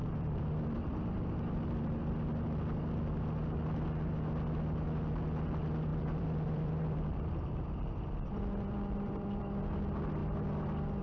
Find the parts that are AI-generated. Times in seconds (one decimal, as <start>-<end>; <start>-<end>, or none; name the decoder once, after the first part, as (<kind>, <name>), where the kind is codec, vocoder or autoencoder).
0.0-2.1 (vocoder, BigVGAN v2); 5.9-9.6